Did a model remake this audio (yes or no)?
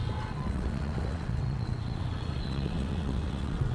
yes